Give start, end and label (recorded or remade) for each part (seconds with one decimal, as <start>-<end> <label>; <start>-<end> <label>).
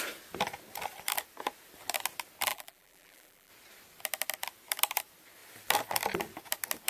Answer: 0.0-2.5 recorded; 2.5-3.5 remade; 3.5-6.9 recorded